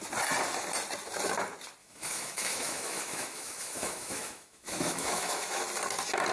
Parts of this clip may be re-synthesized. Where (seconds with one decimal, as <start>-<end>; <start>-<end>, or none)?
1.8-5.6